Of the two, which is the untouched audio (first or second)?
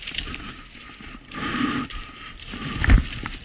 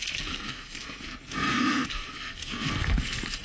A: first